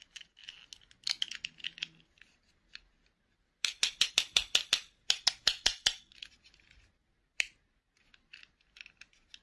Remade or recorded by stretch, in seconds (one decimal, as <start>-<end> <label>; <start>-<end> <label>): 0.0-9.4 recorded